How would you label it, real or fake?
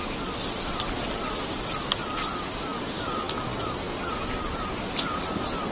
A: real